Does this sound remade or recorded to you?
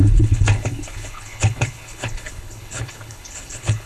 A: remade